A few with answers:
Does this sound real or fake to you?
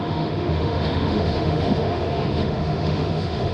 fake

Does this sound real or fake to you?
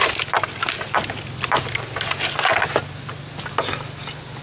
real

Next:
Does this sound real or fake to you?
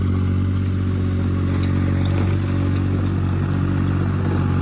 real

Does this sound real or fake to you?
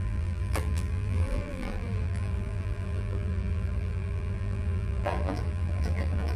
fake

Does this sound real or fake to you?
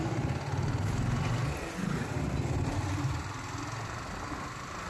real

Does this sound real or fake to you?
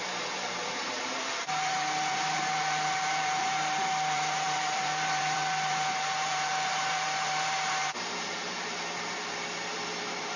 fake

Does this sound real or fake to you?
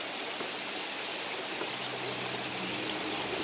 real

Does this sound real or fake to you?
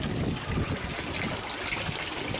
real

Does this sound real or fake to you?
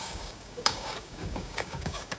fake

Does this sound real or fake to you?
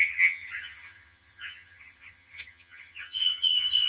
fake